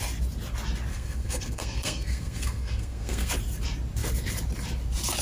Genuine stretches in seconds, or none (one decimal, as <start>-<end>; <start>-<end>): 0.0-0.9; 3.3-5.2